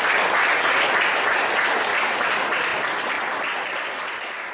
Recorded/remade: recorded